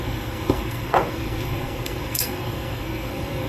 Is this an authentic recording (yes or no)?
no